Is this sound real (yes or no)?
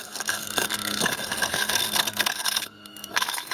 no